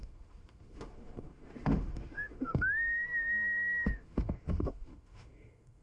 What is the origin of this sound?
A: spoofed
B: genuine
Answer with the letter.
A